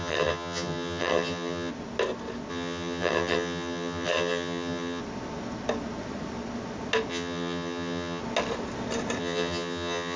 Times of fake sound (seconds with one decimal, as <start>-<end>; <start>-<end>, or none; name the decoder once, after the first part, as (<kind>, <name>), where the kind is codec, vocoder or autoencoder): 0.0-1.7 (vocoder, HiFi-GAN); 2.5-5.0; 7.1-8.2; 9.2-10.2